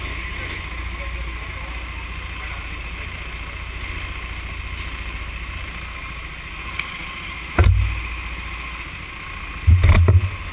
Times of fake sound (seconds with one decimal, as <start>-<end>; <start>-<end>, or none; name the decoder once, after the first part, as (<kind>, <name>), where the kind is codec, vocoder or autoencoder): none